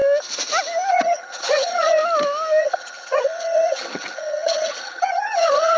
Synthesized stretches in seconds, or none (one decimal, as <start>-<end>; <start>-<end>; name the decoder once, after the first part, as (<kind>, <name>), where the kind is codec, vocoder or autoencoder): 0.9-2.0 (vocoder, HiFi-GAN); 2.6-5.8